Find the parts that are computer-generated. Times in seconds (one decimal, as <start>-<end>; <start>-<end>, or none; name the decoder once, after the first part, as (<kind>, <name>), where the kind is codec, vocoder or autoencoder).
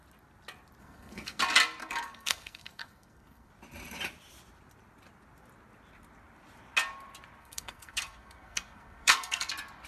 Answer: 0.8-1.4 (codec, SNAC); 1.8-3.5; 7.4-9.5